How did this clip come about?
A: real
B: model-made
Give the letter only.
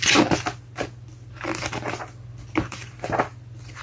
A